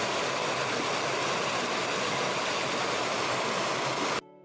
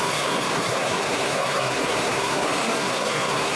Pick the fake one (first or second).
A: second